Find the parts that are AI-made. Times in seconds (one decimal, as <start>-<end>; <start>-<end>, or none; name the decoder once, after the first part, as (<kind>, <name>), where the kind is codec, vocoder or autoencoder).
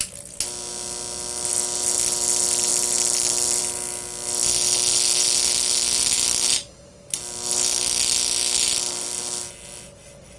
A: none